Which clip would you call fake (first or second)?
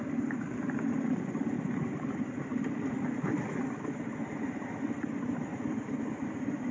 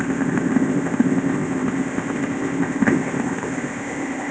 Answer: second